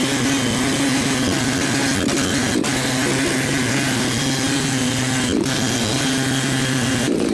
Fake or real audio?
real